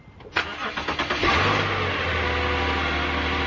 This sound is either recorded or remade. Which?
recorded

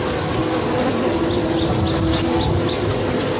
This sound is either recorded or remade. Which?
recorded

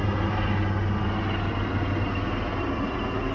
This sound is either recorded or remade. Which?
recorded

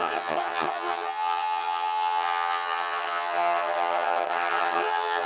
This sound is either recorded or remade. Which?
remade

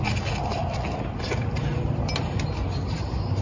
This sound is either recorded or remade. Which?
recorded